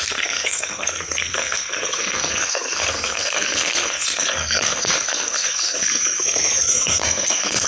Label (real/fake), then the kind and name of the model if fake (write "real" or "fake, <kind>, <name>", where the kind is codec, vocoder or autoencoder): fake, codec, SNAC